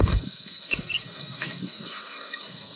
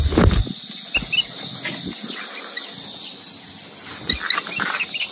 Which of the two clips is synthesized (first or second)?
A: first